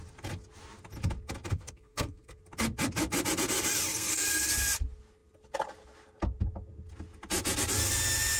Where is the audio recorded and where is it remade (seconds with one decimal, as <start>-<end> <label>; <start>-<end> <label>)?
0.0-1.5 recorded; 1.5-2.4 remade; 2.4-3.9 recorded; 3.9-4.5 remade; 4.5-8.4 recorded